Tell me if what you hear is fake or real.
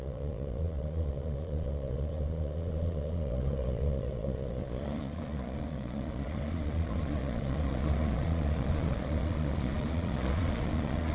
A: fake